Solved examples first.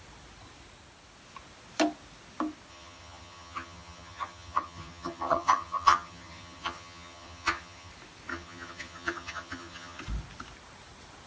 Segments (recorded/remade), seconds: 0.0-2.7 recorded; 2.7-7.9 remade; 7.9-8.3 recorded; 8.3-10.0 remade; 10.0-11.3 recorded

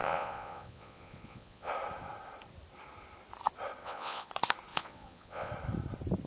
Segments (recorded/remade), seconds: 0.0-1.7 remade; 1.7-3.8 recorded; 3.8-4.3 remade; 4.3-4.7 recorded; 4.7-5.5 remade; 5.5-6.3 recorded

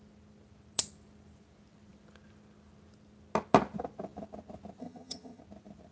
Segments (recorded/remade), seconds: 0.0-4.8 recorded; 4.8-5.4 remade; 5.4-5.9 recorded

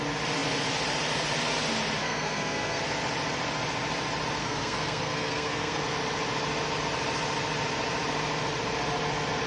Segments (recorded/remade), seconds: 0.0-2.0 recorded; 2.0-2.8 remade; 2.8-4.4 recorded; 4.4-5.8 remade; 5.8-9.5 recorded

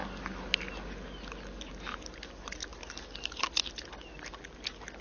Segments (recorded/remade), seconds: 0.0-5.0 recorded